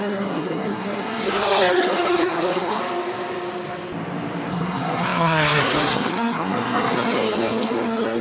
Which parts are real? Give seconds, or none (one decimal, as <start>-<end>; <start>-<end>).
2.8-4.5